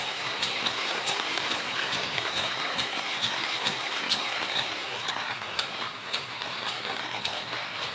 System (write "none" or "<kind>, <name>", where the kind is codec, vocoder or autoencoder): codec, SNAC